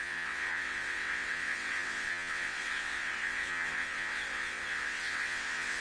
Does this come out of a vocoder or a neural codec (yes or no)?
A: yes